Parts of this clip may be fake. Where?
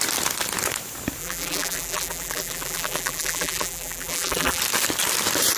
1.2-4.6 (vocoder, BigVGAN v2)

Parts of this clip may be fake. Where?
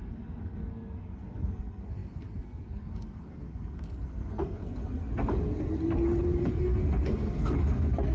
0.0-5.1 (codec, SNAC); 6.4-8.1